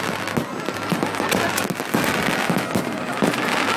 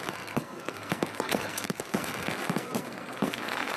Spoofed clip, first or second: second